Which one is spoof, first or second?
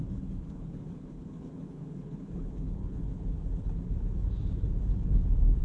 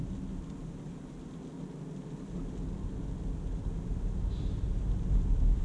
first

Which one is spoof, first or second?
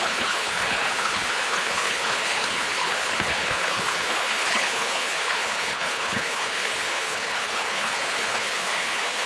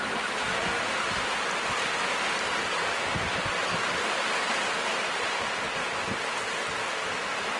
first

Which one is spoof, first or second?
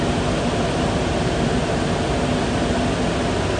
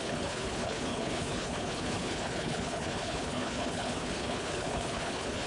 second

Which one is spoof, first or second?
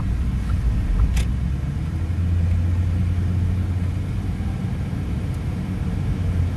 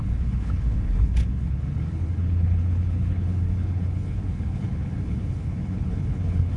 second